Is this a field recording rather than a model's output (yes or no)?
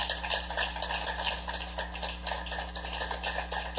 yes